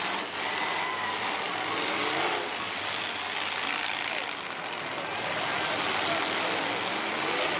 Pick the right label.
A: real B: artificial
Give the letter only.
A